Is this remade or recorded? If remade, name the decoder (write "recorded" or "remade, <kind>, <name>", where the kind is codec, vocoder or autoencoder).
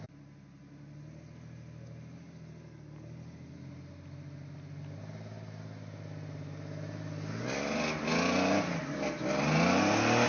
recorded